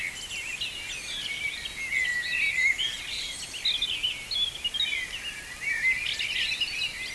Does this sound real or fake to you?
real